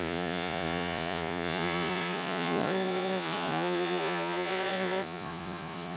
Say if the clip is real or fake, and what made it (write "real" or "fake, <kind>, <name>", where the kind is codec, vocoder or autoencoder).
fake, vocoder, Vocos